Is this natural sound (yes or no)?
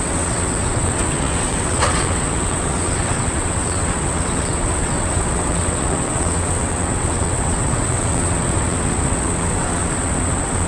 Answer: no